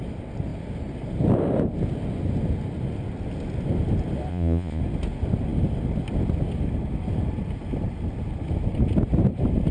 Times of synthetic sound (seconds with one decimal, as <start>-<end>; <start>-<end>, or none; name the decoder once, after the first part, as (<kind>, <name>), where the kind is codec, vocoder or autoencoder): 4.3-4.8 (vocoder, Vocos)